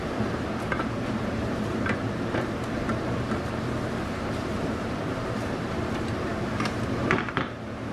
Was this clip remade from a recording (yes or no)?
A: yes